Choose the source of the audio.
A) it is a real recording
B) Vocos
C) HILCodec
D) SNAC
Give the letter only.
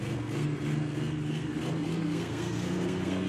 D